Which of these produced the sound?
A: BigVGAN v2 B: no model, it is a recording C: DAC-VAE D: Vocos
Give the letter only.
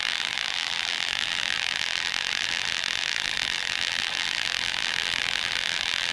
A